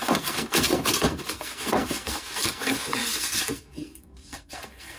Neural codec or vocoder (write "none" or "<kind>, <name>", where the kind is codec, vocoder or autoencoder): codec, SNAC